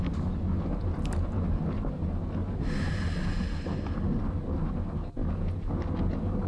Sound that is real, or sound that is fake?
real